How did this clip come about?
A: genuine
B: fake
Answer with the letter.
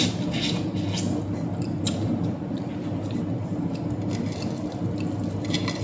A